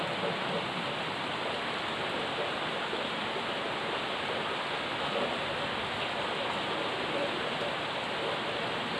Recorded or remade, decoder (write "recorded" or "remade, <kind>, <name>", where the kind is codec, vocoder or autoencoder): recorded